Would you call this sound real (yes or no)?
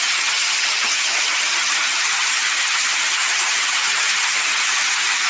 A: no